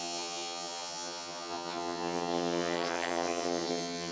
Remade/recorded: remade